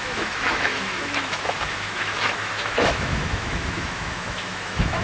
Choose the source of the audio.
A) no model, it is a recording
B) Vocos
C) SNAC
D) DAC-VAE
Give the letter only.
D